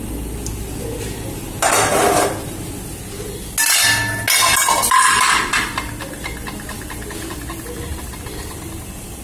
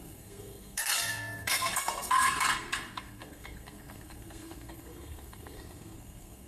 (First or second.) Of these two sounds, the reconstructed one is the second